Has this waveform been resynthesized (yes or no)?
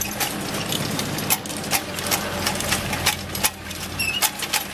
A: no